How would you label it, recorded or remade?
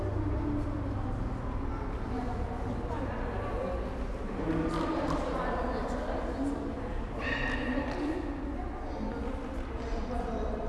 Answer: recorded